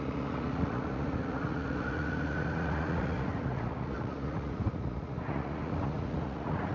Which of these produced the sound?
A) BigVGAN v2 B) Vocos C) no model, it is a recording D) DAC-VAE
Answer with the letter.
B